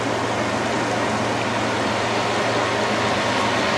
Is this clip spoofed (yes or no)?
no